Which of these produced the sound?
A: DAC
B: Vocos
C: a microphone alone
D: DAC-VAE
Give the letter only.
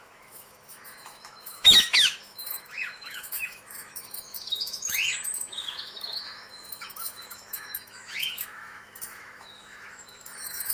D